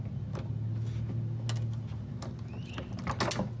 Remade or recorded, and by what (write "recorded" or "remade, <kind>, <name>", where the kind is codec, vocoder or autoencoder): recorded